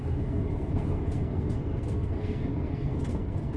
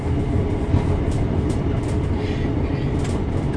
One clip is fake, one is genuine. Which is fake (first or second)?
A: first